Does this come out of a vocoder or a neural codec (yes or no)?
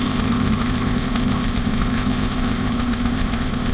yes